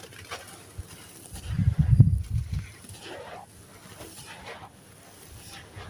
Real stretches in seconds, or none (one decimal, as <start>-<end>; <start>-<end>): 0.0-5.9